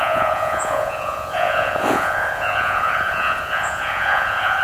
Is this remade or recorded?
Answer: remade